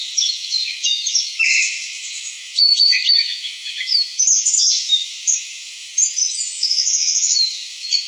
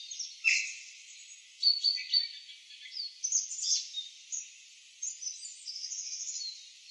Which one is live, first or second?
second